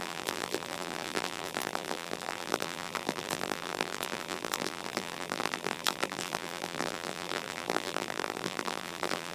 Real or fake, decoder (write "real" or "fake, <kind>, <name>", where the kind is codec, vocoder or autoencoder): fake, vocoder, BigVGAN v2